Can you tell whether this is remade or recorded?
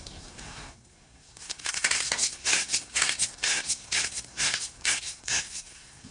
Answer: remade